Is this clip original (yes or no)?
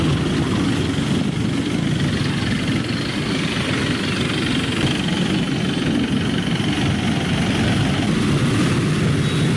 yes